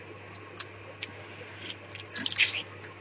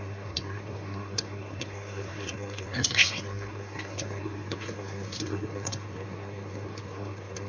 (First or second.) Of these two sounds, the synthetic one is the second